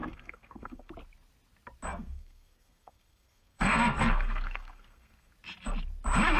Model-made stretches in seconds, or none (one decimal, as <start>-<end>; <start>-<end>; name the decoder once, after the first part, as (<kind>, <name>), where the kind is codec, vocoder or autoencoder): 0.0-0.9 (codec, SNAC); 1.9-5.3